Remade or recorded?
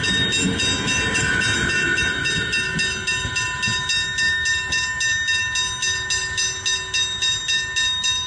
recorded